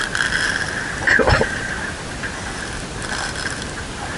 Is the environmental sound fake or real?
real